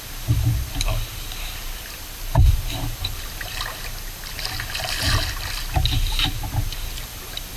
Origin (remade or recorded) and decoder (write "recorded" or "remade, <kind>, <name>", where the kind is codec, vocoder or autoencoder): recorded